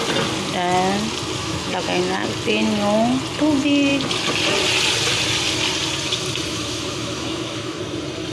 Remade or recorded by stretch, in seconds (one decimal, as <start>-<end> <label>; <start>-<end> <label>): 0.0-1.4 recorded; 1.4-2.0 remade; 2.0-6.5 recorded; 6.5-7.8 remade; 7.8-8.3 recorded